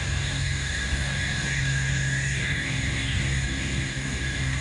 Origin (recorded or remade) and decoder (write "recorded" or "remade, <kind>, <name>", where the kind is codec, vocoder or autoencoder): remade, codec, DAC